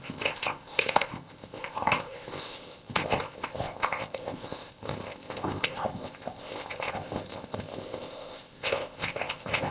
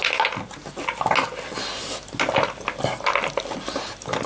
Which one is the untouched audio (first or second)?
second